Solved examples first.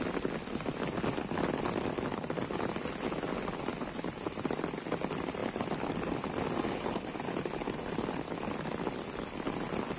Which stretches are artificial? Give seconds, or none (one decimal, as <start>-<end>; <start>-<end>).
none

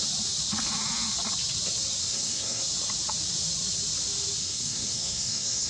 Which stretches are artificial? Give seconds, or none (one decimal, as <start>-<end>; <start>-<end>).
2.0-2.6; 4.4-5.7

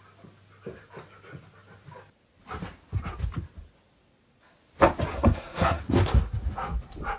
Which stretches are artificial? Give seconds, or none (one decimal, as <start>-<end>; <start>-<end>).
5.1-5.8